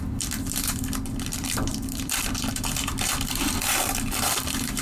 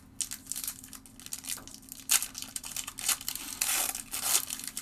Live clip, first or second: second